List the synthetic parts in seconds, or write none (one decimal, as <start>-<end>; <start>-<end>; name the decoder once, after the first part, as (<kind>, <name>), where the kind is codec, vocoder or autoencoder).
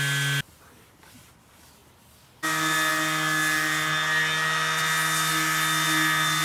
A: none